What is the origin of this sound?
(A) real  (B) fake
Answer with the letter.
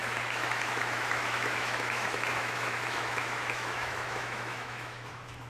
B